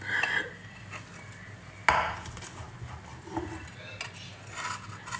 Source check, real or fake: real